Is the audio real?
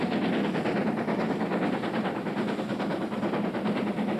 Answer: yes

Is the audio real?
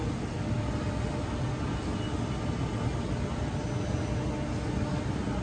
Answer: yes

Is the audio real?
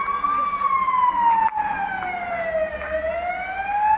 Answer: yes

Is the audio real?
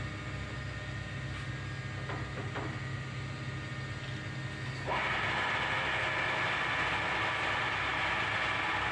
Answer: yes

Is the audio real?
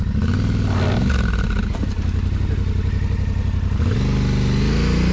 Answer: yes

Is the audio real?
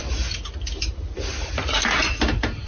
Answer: yes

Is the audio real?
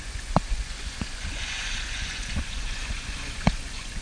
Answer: no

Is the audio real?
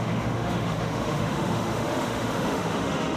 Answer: no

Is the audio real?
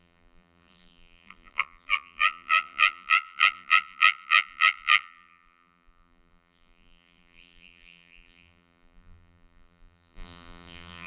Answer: no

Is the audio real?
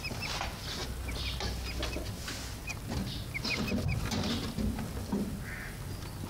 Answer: yes